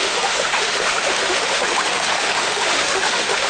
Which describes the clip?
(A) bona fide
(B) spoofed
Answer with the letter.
B